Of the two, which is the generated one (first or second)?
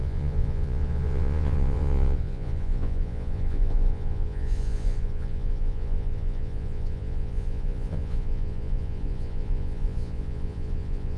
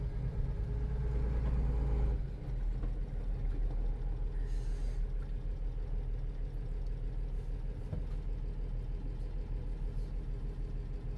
first